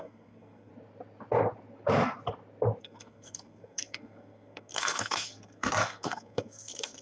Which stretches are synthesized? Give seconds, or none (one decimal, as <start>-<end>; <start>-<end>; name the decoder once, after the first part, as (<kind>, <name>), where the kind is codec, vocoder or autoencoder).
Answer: 0.0-0.7 (codec, SNAC); 2.8-7.0